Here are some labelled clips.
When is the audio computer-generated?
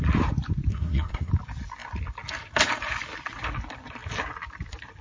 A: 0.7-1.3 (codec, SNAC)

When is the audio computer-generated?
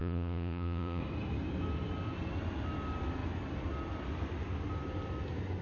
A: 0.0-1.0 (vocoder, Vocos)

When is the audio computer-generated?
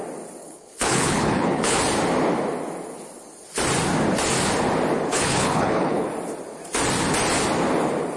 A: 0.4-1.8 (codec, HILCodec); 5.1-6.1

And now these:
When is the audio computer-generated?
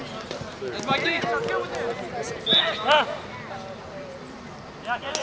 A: none